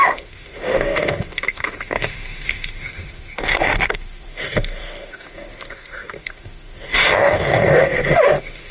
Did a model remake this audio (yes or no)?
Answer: yes